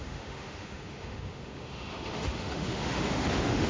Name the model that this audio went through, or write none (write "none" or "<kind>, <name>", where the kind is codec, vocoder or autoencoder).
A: autoencoder, DAC-VAE